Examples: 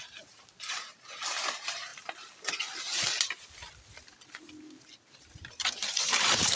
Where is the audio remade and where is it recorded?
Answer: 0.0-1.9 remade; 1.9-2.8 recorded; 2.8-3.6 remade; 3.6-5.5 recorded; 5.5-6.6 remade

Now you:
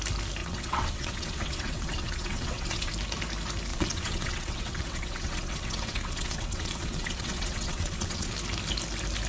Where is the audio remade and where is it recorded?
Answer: 0.0-0.4 recorded; 0.4-2.9 remade; 2.9-3.7 recorded; 3.7-8.3 remade; 8.3-9.3 recorded

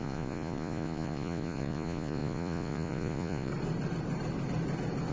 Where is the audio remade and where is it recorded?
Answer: 0.0-3.5 remade; 3.5-5.1 recorded